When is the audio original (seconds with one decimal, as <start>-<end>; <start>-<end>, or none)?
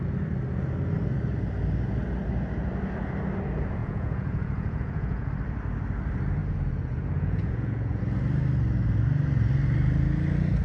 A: 0.0-3.8; 5.3-6.4; 8.0-10.6